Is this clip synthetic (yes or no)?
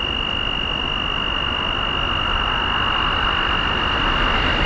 no